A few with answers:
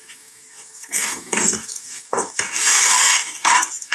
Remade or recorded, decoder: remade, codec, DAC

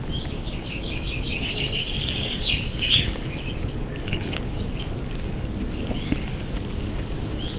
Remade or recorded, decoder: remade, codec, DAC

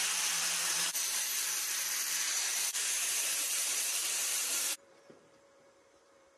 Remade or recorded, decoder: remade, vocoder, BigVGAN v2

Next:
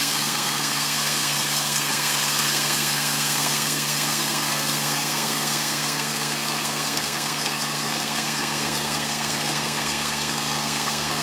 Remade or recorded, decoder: remade, codec, SNAC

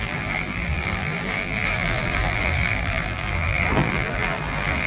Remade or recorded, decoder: remade, vocoder, BigVGAN v2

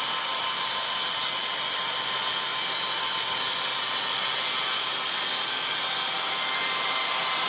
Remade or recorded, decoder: recorded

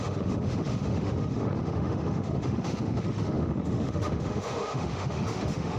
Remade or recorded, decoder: remade, autoencoder, DAC-VAE